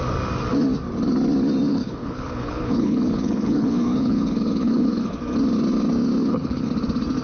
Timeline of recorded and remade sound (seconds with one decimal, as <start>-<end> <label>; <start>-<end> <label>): 0.0-1.7 recorded; 1.7-5.2 remade; 5.2-6.2 recorded; 6.2-6.7 remade; 6.7-7.2 recorded

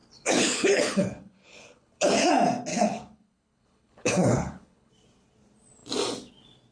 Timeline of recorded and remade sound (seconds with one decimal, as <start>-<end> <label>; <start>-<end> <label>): 0.0-2.3 remade; 2.3-2.7 recorded; 2.7-4.9 remade; 4.9-6.7 recorded

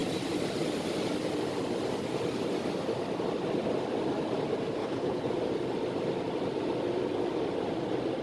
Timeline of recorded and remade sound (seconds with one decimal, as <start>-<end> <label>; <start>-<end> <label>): 0.0-4.8 recorded; 4.8-5.3 remade; 5.3-8.2 recorded

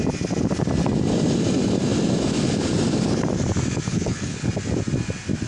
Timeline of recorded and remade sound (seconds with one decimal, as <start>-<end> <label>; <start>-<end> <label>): 0.0-3.9 recorded; 3.9-4.5 remade; 4.5-5.5 recorded

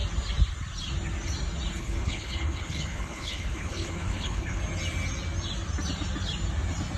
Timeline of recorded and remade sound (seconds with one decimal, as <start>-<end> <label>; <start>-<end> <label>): 0.0-1.8 recorded; 1.8-4.6 remade; 4.6-7.0 recorded

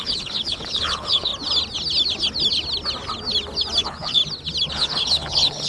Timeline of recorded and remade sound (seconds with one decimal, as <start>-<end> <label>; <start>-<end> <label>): 0.0-1.3 remade; 1.3-3.8 recorded; 3.8-4.2 remade; 4.2-4.7 recorded; 4.7-5.7 remade

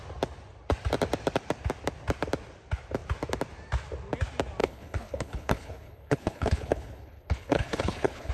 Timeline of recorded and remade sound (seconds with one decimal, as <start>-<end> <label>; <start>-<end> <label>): 0.0-4.6 recorded; 4.6-8.3 remade

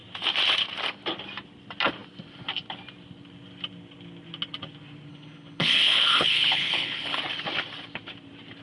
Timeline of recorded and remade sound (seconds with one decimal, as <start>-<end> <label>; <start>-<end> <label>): 0.0-5.1 recorded; 5.1-7.2 remade; 7.2-8.6 recorded